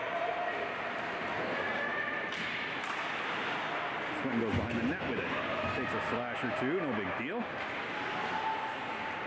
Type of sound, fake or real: real